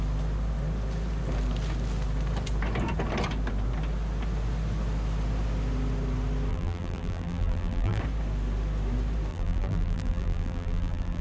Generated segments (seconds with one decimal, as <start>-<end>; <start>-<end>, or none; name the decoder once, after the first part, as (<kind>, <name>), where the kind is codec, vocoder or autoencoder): 6.5-8.0 (vocoder, BigVGAN v2); 9.3-11.2